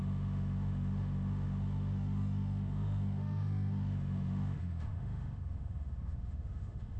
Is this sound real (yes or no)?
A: no